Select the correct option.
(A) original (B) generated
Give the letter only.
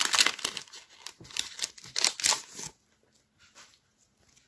A